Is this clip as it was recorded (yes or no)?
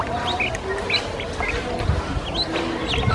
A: yes